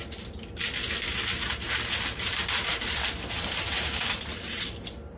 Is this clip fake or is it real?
real